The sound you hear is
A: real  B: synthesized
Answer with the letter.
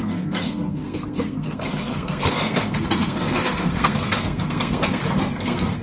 B